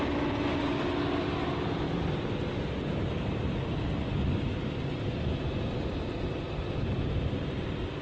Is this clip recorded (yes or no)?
yes